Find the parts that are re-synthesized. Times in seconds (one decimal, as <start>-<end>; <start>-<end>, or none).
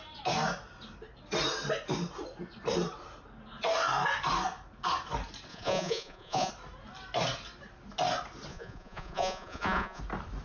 5.5-6.5; 8.5-10.0